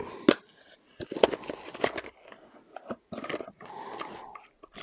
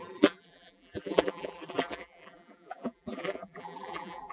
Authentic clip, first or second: first